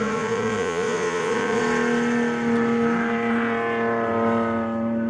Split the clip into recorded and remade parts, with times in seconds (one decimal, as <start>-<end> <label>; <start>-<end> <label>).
0.0-1.6 remade; 1.6-5.1 recorded